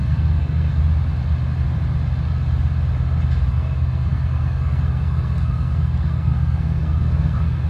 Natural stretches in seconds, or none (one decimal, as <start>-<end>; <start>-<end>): 0.8-3.5